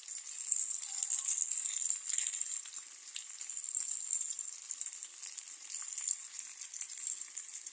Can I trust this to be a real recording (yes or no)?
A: yes